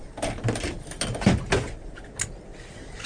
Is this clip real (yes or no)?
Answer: yes